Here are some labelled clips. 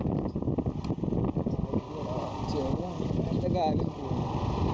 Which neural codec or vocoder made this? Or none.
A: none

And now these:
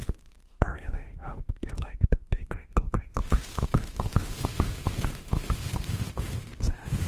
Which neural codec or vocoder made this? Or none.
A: autoencoder, DAC-VAE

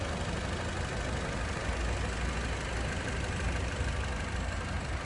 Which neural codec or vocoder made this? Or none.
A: none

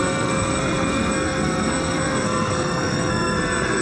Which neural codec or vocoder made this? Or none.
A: codec, SNAC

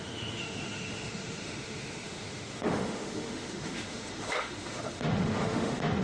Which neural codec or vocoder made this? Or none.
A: autoencoder, DAC-VAE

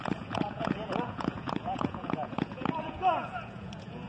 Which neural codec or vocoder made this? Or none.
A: vocoder, Vocos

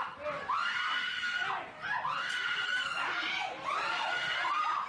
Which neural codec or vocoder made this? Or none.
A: none